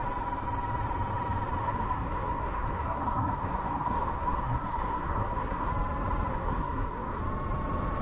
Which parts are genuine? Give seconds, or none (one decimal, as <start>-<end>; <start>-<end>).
0.0-1.6; 5.7-6.3; 7.2-8.0